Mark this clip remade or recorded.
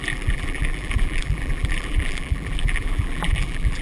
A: remade